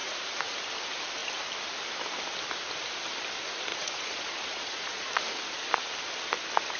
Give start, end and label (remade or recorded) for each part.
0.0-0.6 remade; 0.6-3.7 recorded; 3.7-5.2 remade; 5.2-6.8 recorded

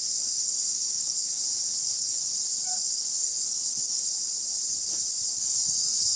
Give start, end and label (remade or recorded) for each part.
0.0-1.4 remade; 1.4-1.8 recorded; 1.8-2.3 remade; 2.3-2.7 recorded; 2.7-4.0 remade; 4.0-5.3 recorded; 5.3-6.2 remade

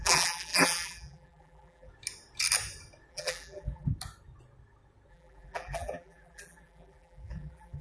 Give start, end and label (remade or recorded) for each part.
0.0-1.9 remade; 1.9-3.1 recorded; 3.1-3.9 remade; 3.9-5.1 recorded; 5.1-7.8 remade

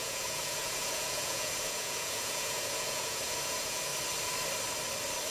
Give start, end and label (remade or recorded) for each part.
0.0-3.9 remade; 3.9-5.3 recorded

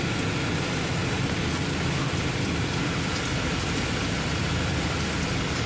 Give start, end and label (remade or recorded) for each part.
0.0-1.0 recorded; 1.0-4.4 remade; 4.4-5.7 recorded

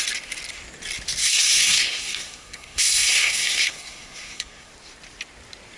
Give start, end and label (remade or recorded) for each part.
0.0-1.2 recorded; 1.2-4.7 remade; 4.7-5.8 recorded